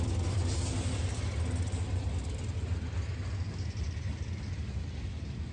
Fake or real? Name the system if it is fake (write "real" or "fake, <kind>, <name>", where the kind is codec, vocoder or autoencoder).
real